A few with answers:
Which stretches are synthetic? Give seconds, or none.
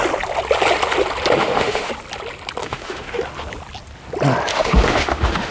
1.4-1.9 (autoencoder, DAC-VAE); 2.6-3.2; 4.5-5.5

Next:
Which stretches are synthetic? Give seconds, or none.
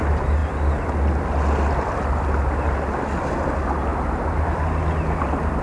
none